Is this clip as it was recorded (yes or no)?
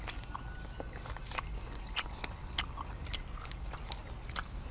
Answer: yes